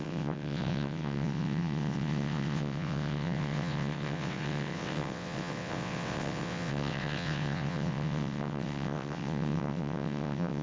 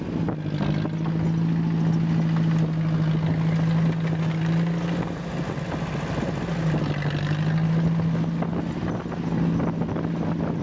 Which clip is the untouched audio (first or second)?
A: second